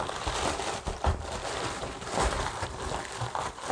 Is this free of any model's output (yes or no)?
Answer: no